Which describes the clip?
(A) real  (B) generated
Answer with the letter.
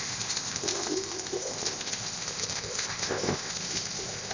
B